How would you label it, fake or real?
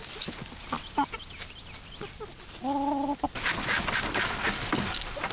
real